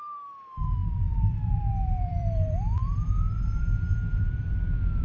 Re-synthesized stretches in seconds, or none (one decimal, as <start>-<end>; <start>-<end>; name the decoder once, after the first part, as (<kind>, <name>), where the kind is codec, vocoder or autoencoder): 0.0-5.0 (vocoder, BigVGAN v2)

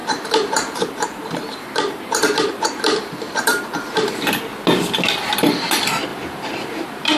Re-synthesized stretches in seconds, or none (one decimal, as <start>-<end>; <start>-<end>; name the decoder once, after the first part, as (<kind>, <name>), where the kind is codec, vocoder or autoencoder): 0.0-4.3 (vocoder, BigVGAN v2); 6.1-7.2